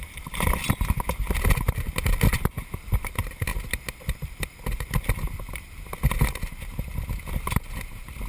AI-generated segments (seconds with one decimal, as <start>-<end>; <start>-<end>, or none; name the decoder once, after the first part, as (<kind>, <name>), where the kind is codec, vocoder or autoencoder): none